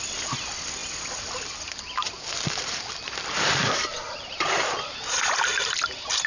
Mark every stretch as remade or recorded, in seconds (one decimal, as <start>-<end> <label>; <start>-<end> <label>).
0.0-6.3 recorded